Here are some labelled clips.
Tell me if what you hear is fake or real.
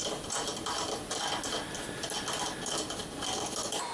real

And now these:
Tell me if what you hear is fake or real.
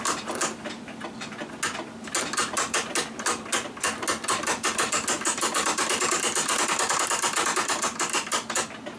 real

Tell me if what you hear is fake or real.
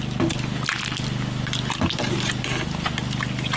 real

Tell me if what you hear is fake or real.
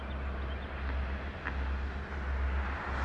real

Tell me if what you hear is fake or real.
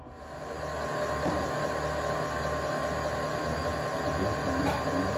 real